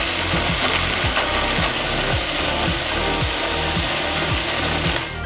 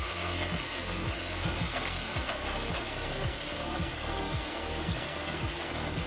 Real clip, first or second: first